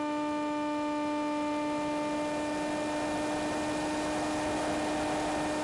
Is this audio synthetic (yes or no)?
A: no